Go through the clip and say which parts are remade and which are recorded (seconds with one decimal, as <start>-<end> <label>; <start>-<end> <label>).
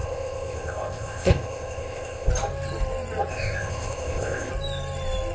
0.0-2.3 remade; 2.3-3.3 recorded; 3.3-4.5 remade; 4.5-5.3 recorded